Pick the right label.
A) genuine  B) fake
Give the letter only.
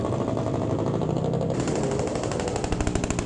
A